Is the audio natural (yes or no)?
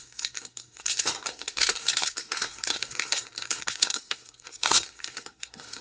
no